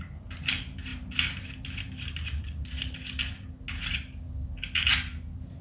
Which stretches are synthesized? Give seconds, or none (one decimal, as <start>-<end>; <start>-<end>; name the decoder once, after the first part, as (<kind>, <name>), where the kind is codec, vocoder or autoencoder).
none